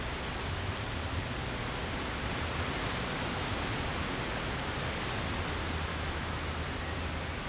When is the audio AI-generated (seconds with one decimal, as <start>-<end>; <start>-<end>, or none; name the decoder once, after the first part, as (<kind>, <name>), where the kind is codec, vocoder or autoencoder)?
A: 5.9-6.5 (autoencoder, DAC-VAE)